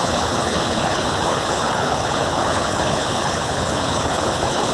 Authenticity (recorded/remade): remade